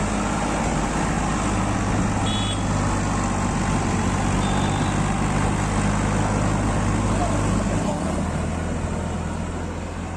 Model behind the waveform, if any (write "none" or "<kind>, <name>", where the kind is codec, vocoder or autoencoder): none